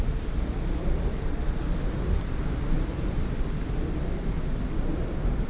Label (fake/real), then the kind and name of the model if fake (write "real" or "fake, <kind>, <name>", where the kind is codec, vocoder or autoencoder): fake, vocoder, BigVGAN v2